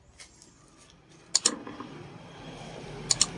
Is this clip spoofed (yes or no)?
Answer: no